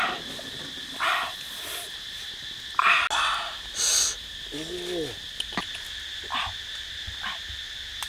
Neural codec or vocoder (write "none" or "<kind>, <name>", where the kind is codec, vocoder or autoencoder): none